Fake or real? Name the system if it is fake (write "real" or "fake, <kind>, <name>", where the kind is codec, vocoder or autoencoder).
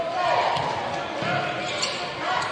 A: real